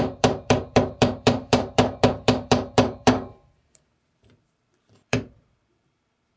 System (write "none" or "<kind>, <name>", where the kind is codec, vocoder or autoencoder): vocoder, BigVGAN v2